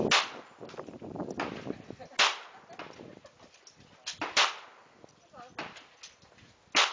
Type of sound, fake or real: real